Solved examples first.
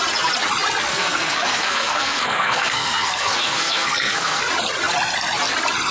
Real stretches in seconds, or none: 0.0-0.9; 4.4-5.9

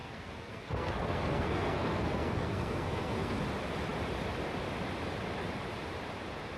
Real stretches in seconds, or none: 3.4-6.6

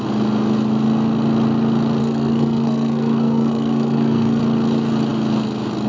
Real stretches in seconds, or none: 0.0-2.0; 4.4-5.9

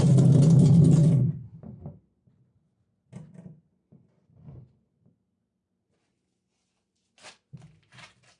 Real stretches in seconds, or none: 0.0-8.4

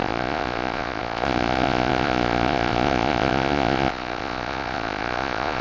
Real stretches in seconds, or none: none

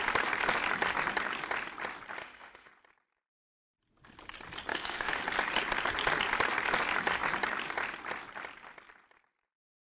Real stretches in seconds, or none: 0.0-2.2; 2.7-4.7; 5.2-9.8

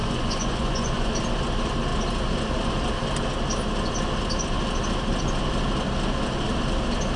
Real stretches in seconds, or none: 1.1-7.2

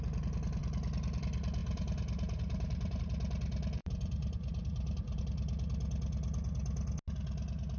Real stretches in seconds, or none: 0.0-1.6; 3.0-3.8; 5.2-7.8